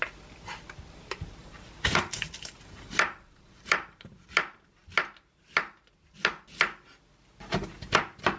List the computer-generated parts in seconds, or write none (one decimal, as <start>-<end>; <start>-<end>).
1.4-4.2